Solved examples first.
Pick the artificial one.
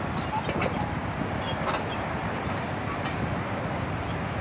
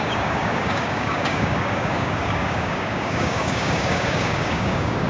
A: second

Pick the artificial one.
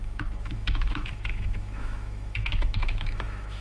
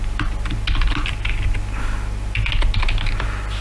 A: first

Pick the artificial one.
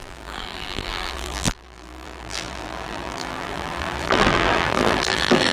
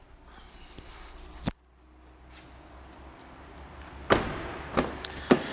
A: first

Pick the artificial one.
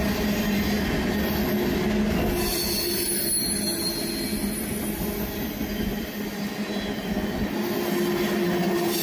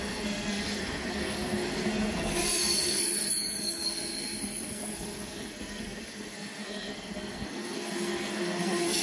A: second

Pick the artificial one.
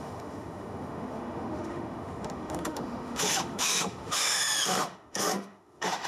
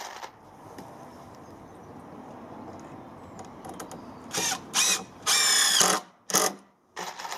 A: first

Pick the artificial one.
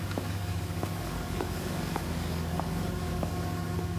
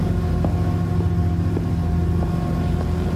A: first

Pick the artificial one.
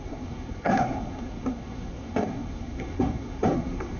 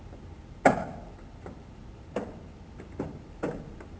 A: first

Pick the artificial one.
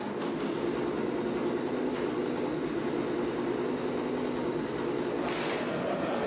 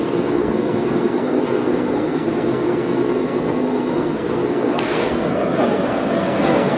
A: second